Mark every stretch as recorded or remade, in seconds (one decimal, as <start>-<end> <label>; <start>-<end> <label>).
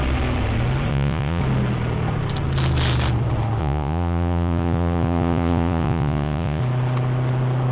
0.0-0.9 recorded; 0.9-1.4 remade; 1.4-3.6 recorded; 3.6-6.6 remade; 6.6-7.7 recorded